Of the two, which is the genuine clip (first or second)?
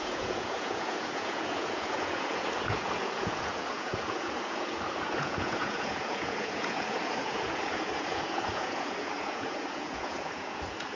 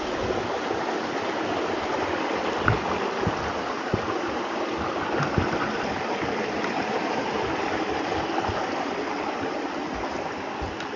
second